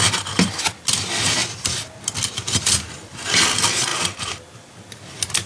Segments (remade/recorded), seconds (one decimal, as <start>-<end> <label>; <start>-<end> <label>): 0.0-5.5 recorded